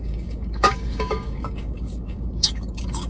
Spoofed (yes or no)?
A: yes